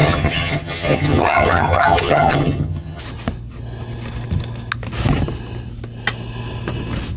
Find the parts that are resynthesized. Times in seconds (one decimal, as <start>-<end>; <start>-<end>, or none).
0.0-3.0